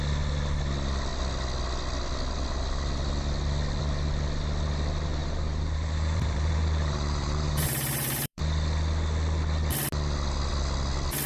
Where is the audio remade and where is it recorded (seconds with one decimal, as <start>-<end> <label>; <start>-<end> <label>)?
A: 0.0-5.2 recorded; 5.2-8.4 remade; 8.4-11.3 recorded